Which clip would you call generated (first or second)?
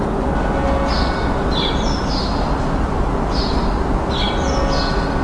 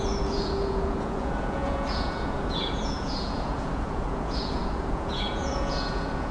second